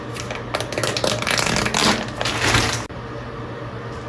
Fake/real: real